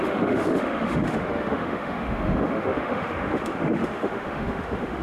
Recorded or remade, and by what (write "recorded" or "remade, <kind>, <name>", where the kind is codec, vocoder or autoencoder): remade, autoencoder, DAC-VAE